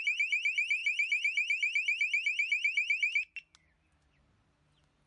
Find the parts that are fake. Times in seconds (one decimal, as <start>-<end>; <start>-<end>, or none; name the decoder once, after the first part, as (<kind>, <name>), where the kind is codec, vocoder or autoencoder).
none